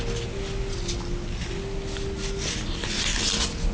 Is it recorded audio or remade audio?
recorded